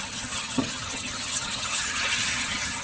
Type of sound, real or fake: fake